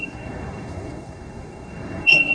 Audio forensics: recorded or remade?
remade